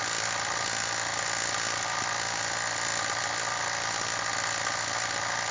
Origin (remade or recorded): recorded